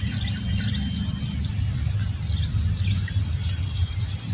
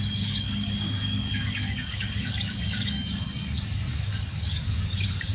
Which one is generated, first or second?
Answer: second